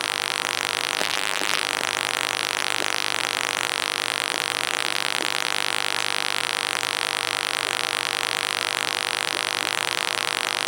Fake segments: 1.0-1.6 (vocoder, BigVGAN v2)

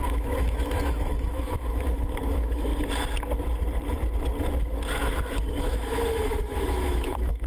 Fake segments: 0.0-2.7 (autoencoder, DAC-VAE); 5.5-7.5

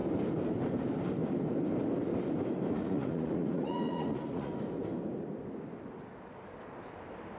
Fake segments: 2.7-4.5 (vocoder, Vocos)